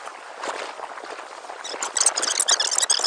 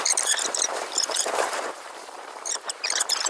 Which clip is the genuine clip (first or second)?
first